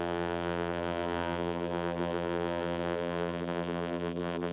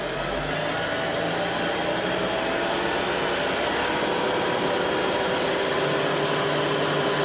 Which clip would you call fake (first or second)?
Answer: first